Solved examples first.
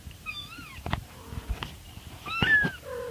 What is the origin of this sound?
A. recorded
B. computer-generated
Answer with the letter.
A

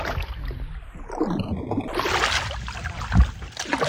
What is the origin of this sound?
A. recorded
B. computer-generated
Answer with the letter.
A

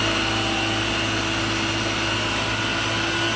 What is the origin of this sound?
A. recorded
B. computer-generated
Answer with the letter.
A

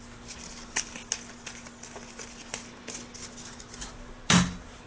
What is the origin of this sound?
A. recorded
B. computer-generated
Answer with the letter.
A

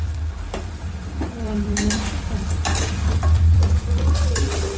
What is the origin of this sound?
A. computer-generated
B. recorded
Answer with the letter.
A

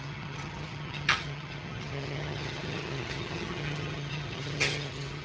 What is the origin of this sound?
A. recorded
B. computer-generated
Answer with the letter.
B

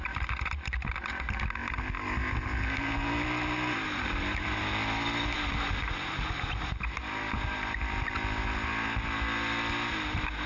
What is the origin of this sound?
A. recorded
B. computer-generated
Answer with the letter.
A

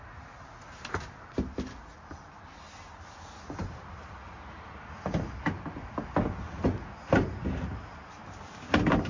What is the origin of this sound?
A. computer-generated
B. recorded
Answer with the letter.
B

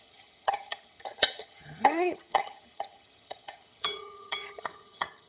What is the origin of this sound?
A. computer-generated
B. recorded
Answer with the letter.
A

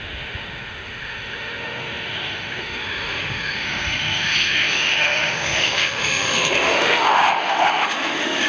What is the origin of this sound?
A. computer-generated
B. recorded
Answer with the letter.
A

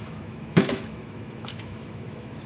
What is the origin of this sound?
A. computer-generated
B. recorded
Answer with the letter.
A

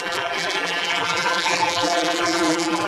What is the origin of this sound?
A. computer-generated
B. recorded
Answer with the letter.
A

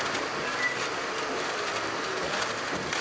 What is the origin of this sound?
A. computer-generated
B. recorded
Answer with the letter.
B